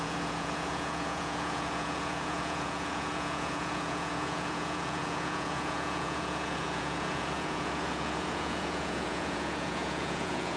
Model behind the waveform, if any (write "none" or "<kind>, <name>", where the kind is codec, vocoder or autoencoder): vocoder, Vocos